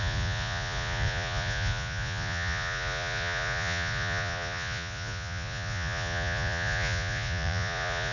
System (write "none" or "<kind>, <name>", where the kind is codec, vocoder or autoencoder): vocoder, Vocos